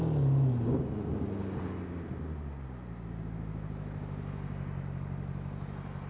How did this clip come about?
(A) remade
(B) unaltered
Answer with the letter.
B